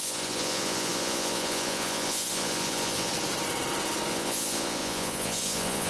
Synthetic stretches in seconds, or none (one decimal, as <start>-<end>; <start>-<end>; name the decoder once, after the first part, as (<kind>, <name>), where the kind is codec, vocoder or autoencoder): 0.0-3.1 (vocoder, Vocos); 4.1-5.9